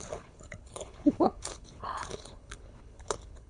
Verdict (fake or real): fake